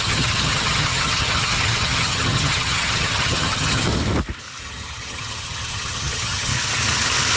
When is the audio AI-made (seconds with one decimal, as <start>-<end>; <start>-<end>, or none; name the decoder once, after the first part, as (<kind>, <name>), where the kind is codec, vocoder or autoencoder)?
0.0-3.9 (vocoder, HiFi-GAN); 4.6-6.5